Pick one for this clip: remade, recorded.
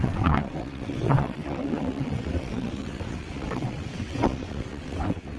remade